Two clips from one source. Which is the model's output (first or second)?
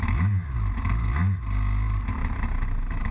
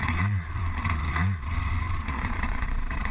second